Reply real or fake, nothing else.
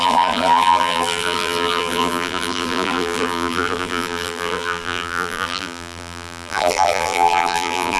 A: fake